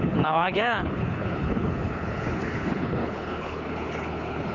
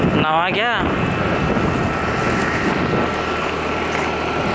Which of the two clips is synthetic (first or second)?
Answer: first